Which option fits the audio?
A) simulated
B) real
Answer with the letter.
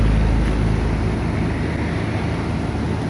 B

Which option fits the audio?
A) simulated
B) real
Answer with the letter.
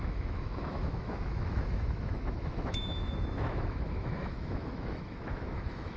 A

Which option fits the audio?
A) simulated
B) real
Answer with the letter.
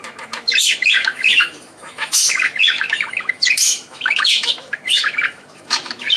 A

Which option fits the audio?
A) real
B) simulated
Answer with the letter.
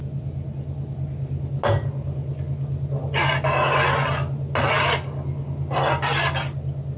A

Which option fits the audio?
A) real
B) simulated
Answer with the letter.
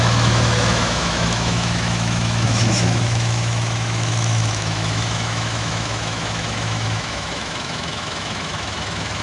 B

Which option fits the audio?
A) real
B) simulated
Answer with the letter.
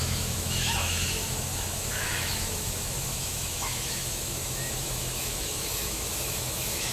B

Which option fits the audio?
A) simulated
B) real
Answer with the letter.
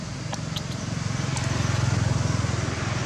B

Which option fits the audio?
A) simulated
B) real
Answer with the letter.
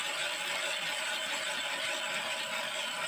B